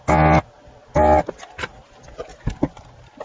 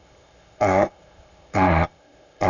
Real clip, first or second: first